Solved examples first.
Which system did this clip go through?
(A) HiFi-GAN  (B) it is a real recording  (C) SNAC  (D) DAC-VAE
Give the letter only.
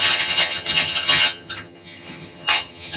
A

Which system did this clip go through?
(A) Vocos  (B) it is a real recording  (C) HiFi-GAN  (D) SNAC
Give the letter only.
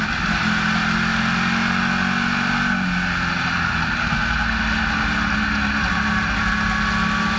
B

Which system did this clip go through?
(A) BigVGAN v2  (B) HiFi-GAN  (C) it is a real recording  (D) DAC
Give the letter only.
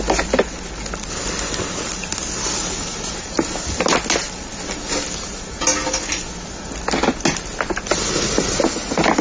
C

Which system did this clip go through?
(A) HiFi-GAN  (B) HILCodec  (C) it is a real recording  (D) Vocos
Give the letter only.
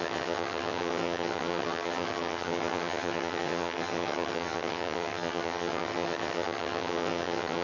A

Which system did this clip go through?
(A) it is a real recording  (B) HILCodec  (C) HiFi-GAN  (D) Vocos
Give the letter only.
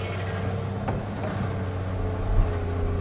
A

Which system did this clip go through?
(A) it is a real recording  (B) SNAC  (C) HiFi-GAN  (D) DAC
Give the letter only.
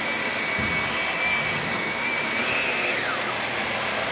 A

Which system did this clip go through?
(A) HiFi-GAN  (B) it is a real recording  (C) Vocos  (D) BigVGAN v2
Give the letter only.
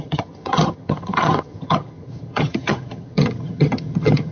A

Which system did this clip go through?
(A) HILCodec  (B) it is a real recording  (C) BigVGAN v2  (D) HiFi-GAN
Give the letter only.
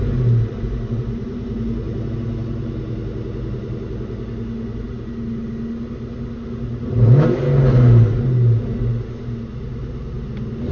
B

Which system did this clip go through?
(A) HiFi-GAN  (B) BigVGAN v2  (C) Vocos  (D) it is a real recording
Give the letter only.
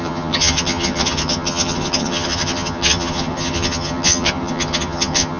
A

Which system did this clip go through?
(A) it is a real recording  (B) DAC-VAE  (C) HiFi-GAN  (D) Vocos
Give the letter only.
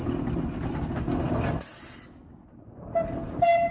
A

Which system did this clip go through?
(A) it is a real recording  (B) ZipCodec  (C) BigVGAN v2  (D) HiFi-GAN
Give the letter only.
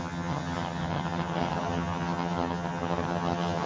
D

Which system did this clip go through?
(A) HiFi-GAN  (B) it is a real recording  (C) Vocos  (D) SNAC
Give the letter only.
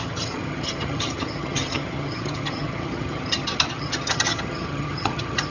A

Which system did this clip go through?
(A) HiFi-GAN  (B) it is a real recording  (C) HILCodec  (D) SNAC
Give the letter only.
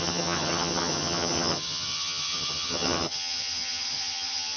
A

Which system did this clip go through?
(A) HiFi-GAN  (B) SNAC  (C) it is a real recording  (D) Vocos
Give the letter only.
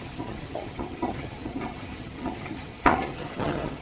A